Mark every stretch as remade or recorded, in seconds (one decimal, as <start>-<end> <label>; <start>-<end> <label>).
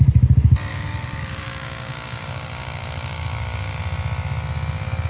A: 0.0-0.7 recorded; 0.7-3.8 remade; 3.8-5.1 recorded